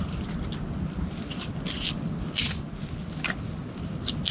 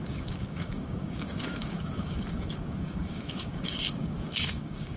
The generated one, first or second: second